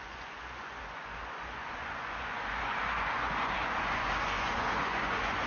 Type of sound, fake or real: fake